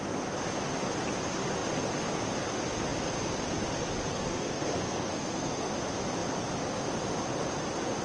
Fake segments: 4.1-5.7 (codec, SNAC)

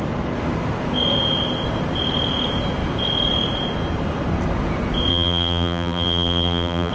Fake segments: 5.1-6.9 (vocoder, BigVGAN v2)

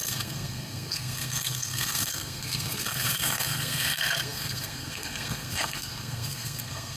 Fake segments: 0.0-7.0 (codec, SNAC)